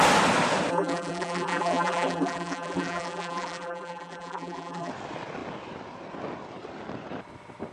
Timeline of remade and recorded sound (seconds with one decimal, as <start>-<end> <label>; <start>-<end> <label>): 0.0-0.7 recorded; 0.7-4.9 remade; 4.9-7.7 recorded